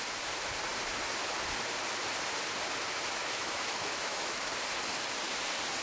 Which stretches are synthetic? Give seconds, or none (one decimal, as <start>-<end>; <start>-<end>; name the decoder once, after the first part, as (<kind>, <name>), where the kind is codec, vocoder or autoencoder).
3.2-4.4 (autoencoder, DAC-VAE)

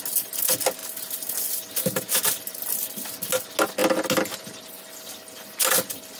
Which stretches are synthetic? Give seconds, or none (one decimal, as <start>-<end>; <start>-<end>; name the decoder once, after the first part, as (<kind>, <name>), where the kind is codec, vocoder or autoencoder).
none

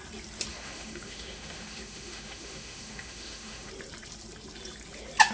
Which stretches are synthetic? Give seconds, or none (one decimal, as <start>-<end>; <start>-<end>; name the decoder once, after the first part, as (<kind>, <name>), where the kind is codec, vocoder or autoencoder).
0.5-3.7 (autoencoder, DAC-VAE)

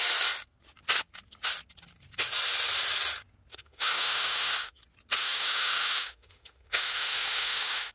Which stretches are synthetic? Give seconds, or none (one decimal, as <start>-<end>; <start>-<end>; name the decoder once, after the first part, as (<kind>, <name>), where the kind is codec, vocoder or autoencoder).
3.5-4.8 (autoencoder, DAC-VAE); 5.2-7.9

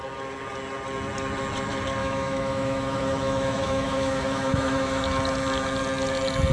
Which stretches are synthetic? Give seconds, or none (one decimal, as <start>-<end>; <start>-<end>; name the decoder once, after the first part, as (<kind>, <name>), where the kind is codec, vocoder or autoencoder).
2.0-5.0 (autoencoder, DAC-VAE)